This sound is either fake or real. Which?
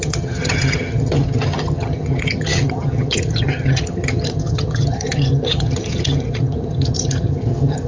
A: fake